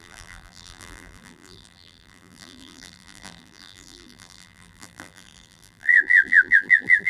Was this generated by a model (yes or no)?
yes